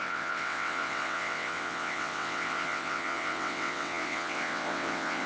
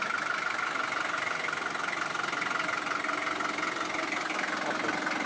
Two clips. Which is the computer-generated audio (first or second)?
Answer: first